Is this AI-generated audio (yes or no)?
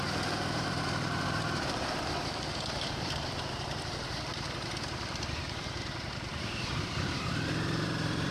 yes